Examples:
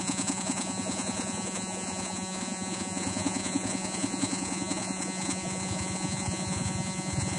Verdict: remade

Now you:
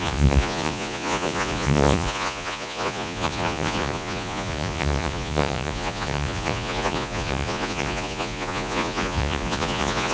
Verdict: remade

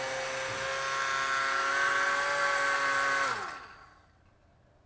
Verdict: recorded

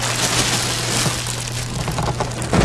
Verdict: recorded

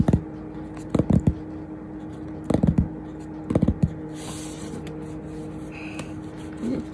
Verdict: recorded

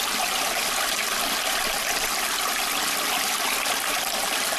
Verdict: recorded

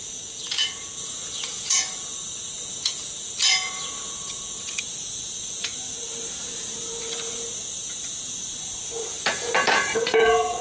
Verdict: remade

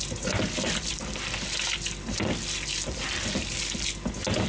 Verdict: recorded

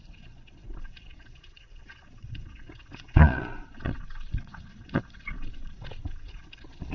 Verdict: remade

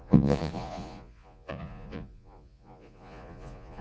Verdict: remade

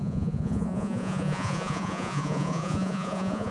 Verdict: remade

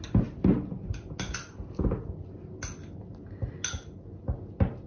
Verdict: recorded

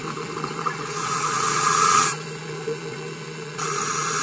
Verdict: remade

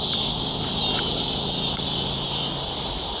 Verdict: recorded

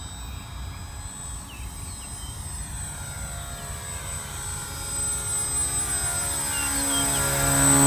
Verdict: recorded